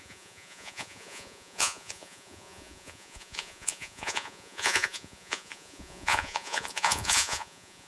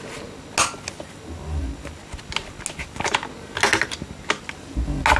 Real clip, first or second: second